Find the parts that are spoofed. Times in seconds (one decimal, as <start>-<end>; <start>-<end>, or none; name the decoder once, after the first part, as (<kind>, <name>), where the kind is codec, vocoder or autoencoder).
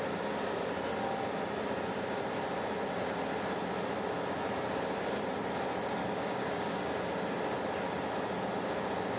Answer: 6.0-6.9 (codec, DAC)